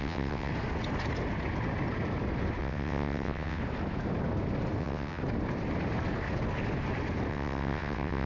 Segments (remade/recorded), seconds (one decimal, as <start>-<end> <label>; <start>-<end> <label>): 0.0-0.5 remade; 0.5-2.6 recorded; 2.6-3.6 remade; 3.6-4.8 recorded; 4.8-5.2 remade; 5.2-7.3 recorded; 7.3-8.3 remade